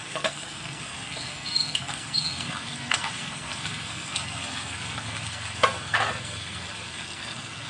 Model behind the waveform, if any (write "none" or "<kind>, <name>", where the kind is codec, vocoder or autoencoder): codec, SNAC